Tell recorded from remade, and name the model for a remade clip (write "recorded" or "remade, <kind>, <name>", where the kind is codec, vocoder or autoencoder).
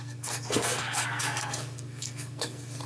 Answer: remade, codec, SNAC